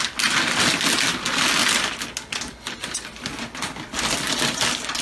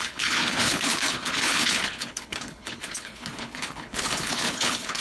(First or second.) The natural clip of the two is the first